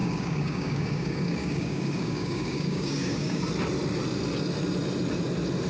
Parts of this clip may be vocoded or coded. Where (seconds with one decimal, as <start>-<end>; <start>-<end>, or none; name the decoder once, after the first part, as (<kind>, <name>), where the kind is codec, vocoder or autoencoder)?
0.0-3.4 (codec, DAC)